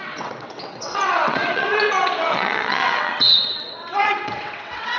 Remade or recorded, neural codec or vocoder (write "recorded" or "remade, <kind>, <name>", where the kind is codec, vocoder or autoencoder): remade, vocoder, WaveNeXt